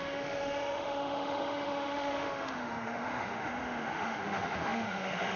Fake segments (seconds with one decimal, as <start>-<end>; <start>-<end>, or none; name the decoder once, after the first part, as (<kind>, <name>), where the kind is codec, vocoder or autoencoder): 0.0-5.4 (autoencoder, DAC-VAE)